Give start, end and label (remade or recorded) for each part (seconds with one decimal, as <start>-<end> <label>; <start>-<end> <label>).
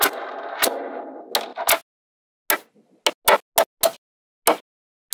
0.0-5.1 recorded